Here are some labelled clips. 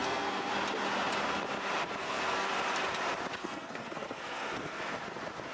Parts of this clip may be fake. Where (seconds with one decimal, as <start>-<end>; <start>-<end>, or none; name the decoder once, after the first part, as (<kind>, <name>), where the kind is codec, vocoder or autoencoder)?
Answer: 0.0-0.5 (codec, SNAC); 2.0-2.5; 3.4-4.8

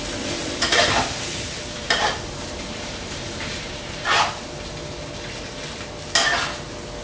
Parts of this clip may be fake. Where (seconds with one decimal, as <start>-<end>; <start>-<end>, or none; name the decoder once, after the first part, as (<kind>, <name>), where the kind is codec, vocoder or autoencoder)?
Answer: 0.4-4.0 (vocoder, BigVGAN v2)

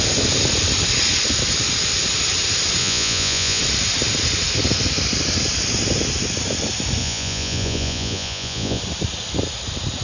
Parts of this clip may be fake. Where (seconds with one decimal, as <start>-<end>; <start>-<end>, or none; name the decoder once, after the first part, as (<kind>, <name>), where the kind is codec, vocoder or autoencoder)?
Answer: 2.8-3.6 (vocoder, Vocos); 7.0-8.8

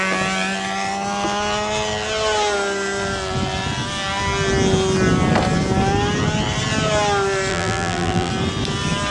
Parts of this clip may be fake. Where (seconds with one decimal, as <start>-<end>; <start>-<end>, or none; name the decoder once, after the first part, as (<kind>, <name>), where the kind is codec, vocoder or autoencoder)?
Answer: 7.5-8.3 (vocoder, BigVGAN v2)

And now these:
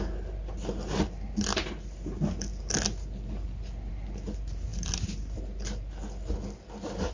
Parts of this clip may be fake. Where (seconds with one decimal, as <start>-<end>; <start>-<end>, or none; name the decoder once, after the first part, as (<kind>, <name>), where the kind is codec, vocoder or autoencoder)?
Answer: none

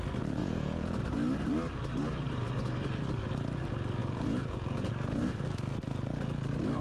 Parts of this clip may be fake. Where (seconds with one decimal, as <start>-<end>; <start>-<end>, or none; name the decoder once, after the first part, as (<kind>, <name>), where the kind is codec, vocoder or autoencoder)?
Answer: 0.4-1.0 (vocoder, Vocos); 4.0-4.9